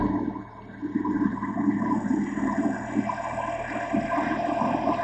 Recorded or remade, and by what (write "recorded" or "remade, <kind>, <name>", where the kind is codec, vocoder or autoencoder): recorded